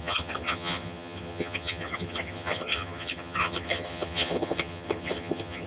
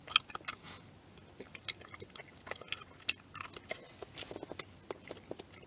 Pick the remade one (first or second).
first